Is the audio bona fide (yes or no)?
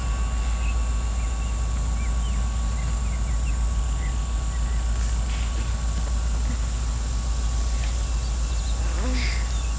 yes